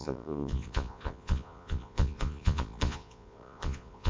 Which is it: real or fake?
fake